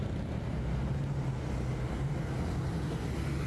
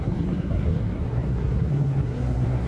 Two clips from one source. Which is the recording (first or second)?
first